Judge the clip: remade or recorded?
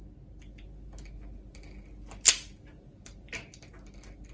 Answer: recorded